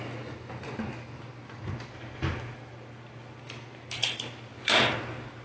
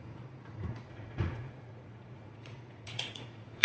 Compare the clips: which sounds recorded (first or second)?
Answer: first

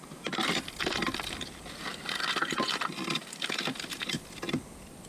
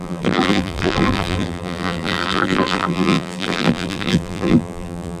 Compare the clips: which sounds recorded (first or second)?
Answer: first